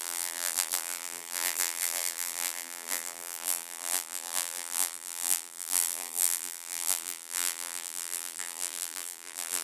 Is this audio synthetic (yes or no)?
yes